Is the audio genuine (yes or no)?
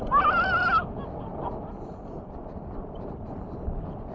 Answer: yes